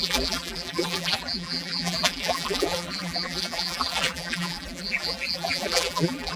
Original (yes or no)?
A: no